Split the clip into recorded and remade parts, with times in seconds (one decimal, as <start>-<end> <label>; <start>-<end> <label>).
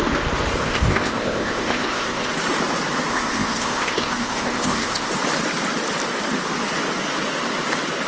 0.0-0.6 recorded; 0.6-2.3 remade; 2.3-3.1 recorded; 3.1-5.1 remade; 5.1-8.1 recorded